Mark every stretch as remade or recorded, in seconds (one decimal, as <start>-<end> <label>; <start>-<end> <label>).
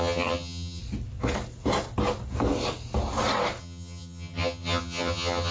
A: 0.0-0.8 remade; 0.8-3.6 recorded; 3.6-5.5 remade